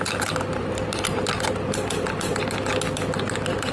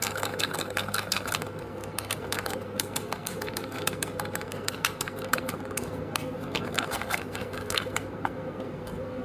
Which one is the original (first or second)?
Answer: first